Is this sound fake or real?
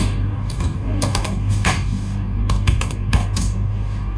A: fake